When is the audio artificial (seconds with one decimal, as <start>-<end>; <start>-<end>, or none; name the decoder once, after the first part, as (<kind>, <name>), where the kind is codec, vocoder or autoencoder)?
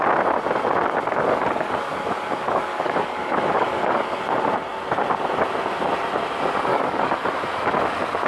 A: 1.3-4.2 (codec, DAC); 6.7-7.3